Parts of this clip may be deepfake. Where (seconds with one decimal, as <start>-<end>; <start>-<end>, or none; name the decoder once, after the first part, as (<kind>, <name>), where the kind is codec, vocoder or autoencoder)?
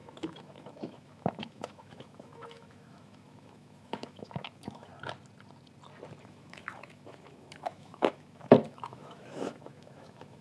0.0-4.9 (autoencoder, DAC-VAE); 6.2-10.4